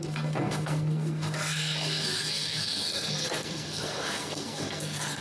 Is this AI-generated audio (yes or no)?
yes